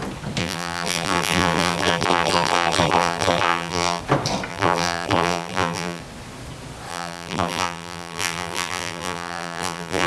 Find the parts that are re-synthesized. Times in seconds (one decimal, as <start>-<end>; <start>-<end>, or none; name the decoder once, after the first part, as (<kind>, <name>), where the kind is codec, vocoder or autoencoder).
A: 0.4-4.0 (vocoder, BigVGAN v2); 4.5-6.0; 6.9-10.1